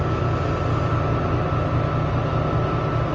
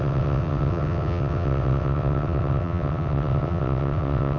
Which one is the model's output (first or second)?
second